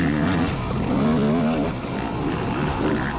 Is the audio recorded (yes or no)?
yes